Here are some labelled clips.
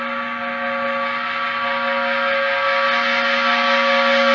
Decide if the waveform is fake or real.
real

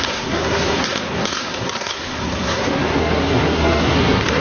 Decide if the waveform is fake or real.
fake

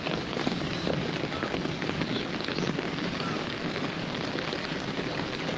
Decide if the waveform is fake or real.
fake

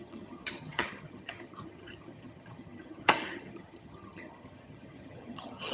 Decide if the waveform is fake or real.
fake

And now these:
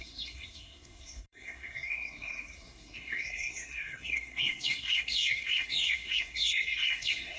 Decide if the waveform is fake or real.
fake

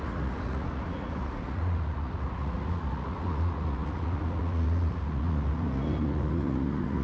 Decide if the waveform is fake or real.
fake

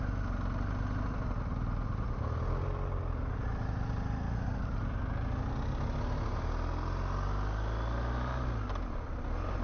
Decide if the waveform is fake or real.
real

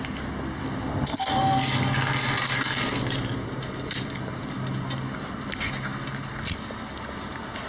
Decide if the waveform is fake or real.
real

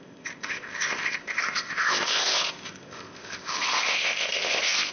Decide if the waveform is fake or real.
fake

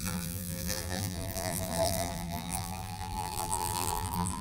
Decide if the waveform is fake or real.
fake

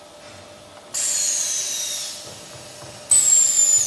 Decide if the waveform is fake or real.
real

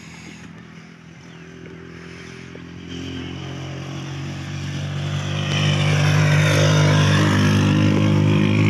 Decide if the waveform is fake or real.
real